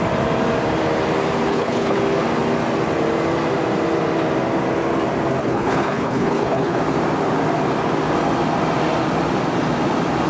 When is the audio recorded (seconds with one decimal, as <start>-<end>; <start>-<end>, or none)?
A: 0.0-1.5; 2.0-5.4; 6.8-10.3